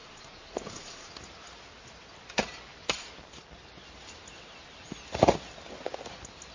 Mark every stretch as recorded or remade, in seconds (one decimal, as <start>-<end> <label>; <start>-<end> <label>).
0.0-1.1 remade; 1.1-6.5 recorded